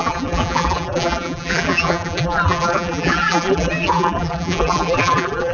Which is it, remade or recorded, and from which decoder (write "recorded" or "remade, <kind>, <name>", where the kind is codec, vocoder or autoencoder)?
remade, vocoder, BigVGAN v2